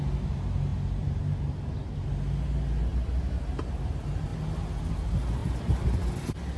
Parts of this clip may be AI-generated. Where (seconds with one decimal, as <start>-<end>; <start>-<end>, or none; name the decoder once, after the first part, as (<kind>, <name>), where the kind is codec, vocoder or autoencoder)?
2.9-3.4 (vocoder, BigVGAN v2)